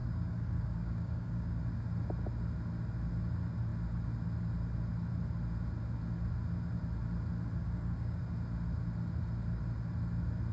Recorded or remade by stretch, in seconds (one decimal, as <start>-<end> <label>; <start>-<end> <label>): 0.0-1.6 remade; 1.6-7.6 recorded; 7.6-8.2 remade; 8.2-10.5 recorded